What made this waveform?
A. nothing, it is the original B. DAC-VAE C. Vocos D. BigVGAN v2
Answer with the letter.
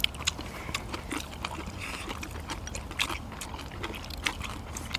A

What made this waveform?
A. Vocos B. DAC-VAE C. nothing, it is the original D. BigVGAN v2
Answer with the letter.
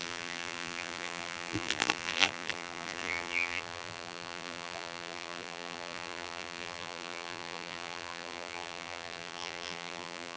D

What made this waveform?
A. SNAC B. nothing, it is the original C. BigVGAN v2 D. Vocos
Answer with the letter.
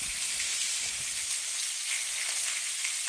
B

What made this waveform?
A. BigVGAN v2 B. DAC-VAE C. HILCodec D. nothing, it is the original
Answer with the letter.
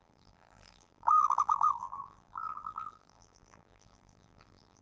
A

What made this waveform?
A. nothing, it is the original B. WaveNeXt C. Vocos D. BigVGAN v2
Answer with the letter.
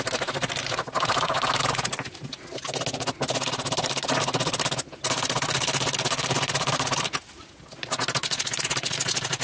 A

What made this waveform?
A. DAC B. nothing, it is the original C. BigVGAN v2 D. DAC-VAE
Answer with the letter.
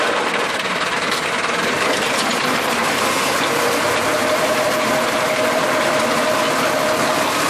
C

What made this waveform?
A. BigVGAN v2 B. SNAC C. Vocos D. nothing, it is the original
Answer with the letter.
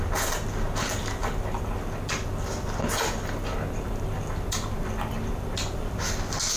D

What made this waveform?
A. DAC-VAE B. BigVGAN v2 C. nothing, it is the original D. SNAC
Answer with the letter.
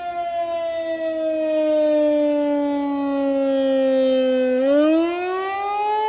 C